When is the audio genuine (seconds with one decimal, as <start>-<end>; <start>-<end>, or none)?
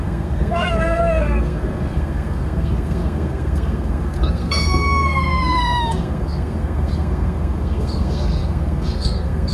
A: none